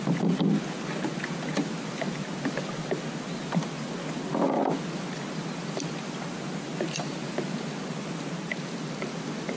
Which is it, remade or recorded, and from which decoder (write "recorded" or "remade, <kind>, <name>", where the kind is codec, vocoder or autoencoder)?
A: recorded